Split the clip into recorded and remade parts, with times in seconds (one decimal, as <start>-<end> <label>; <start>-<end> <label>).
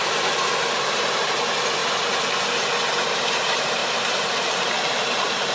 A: 0.0-1.8 remade; 1.8-3.1 recorded; 3.1-5.5 remade